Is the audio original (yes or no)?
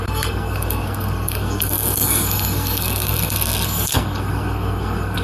no